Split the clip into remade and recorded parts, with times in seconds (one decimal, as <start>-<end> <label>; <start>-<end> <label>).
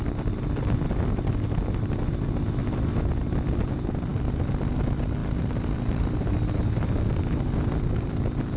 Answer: 0.0-2.6 recorded; 2.6-3.2 remade; 3.2-8.6 recorded